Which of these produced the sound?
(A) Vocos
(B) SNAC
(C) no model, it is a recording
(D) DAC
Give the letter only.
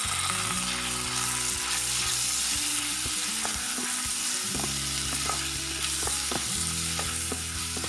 C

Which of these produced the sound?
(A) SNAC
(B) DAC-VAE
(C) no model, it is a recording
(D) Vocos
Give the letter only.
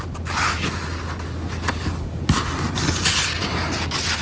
C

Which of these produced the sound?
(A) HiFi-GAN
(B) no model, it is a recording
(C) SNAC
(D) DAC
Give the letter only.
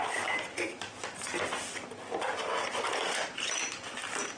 B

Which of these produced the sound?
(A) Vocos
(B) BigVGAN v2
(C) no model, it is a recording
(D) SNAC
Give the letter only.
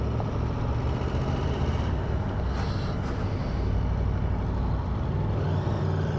C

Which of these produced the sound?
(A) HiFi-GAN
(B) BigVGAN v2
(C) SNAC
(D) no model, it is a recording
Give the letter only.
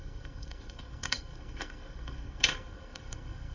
C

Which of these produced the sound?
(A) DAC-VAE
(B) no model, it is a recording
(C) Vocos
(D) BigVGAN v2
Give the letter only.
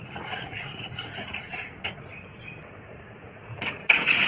C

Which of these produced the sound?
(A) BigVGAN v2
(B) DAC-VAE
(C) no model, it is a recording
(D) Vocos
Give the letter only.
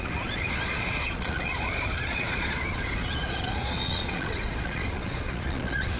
D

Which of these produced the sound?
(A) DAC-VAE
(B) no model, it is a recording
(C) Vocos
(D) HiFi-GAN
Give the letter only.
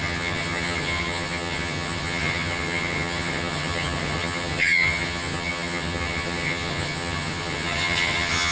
D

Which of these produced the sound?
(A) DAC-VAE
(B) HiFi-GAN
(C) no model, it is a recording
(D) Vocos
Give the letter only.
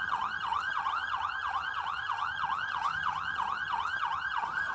B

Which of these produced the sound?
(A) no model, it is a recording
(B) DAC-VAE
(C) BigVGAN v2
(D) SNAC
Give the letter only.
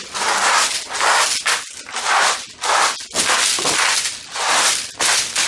A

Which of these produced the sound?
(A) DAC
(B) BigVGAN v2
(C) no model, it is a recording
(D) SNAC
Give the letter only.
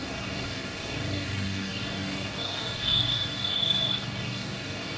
A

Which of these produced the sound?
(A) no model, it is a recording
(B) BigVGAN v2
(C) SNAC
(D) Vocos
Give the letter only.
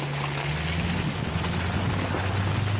A